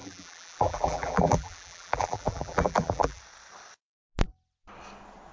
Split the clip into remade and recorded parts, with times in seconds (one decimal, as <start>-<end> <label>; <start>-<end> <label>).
0.0-3.2 remade; 3.2-5.3 recorded